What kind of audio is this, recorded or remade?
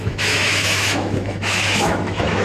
remade